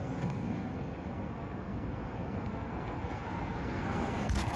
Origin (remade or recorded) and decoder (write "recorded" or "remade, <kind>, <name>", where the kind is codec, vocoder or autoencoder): remade, codec, SNAC